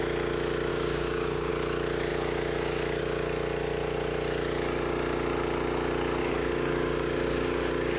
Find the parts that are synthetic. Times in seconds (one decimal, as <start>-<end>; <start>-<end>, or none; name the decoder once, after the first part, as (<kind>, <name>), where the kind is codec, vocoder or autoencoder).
0.7-1.5 (codec, DAC); 6.2-8.0